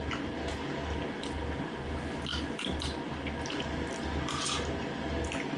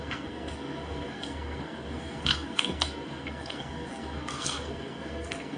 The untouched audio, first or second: first